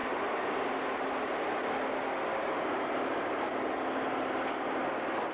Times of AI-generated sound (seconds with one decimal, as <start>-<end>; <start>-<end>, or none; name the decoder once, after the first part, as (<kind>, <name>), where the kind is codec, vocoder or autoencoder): none